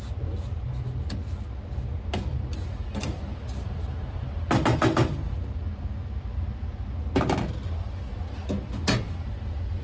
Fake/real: real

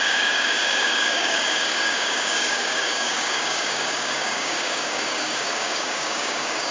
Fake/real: fake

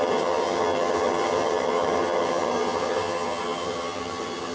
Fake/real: fake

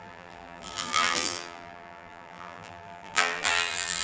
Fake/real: fake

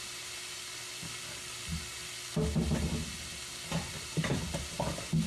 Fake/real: real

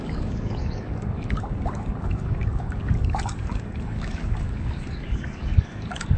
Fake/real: fake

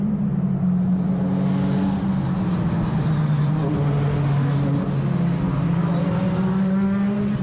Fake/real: real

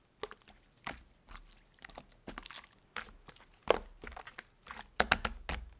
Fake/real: real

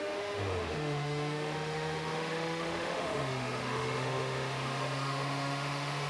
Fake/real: fake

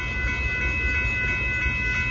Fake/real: real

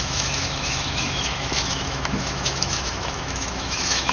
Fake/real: fake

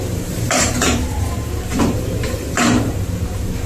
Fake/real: fake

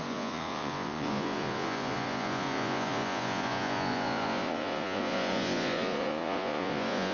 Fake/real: fake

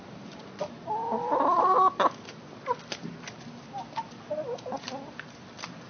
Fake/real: real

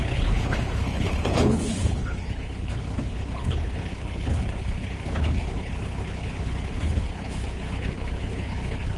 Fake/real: fake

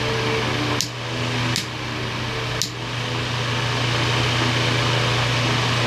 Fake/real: real